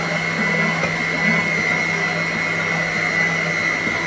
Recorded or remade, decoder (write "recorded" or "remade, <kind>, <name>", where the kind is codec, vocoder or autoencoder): recorded